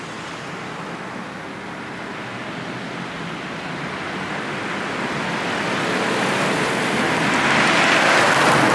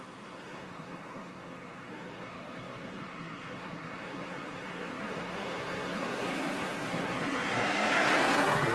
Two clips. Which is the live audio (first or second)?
first